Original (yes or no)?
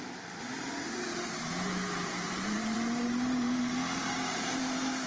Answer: no